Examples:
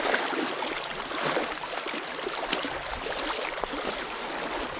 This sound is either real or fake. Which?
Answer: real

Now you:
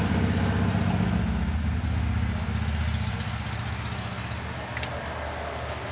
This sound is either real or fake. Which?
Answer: real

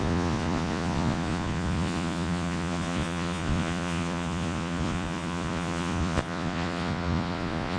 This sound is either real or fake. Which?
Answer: fake